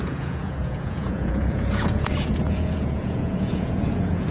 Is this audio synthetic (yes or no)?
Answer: yes